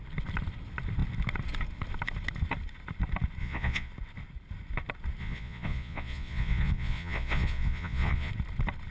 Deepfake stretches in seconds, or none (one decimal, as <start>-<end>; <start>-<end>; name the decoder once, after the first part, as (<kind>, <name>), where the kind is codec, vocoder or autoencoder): 3.4-3.9 (vocoder, Vocos); 5.2-8.3